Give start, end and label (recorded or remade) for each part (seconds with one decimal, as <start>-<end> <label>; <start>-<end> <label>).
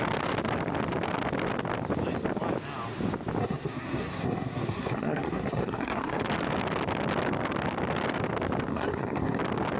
0.0-3.4 recorded; 3.4-6.2 remade; 6.2-8.7 recorded; 8.7-9.4 remade; 9.4-9.8 recorded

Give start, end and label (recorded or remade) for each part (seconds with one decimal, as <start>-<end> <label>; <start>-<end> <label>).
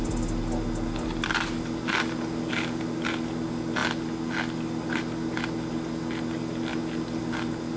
0.0-7.8 recorded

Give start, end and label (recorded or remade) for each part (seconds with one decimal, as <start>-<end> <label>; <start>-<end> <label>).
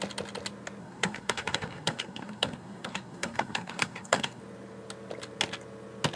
0.0-0.8 recorded; 0.8-4.4 remade; 4.4-6.2 recorded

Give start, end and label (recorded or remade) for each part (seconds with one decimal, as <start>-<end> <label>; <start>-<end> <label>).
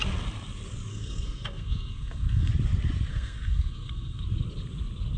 0.0-0.9 recorded; 0.9-2.5 remade; 2.5-3.1 recorded; 3.1-4.2 remade; 4.2-5.2 recorded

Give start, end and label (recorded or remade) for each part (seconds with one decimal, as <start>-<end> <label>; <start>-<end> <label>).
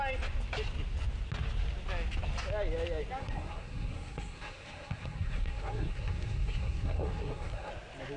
0.0-3.2 recorded; 3.2-7.7 remade; 7.7-8.2 recorded